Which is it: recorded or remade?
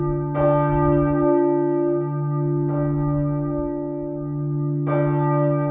recorded